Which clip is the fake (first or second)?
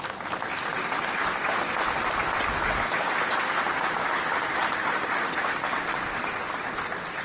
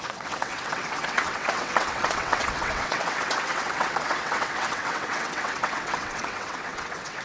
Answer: second